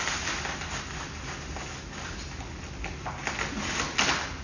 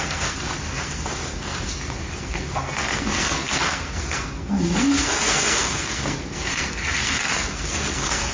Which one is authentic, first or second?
first